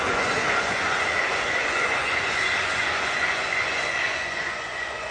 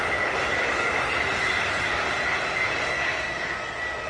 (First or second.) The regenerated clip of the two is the first